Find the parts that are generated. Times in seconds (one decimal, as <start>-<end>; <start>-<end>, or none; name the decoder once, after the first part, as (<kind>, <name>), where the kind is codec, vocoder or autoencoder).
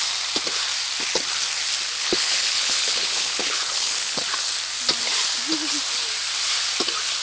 1.9-4.2 (codec, HILCodec)